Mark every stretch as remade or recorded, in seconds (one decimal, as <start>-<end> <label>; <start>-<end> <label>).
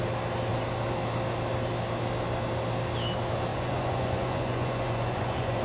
0.0-3.5 recorded; 3.5-5.6 remade